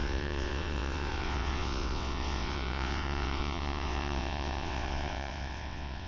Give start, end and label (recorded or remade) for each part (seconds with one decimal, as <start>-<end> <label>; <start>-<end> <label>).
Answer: 0.0-6.1 remade